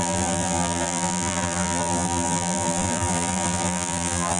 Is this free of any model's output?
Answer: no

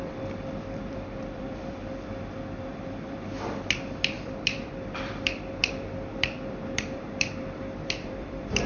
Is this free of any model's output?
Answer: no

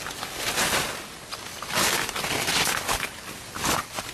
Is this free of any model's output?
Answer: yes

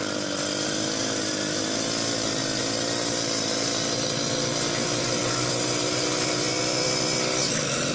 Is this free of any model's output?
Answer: yes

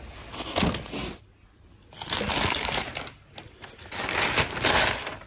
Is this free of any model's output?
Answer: yes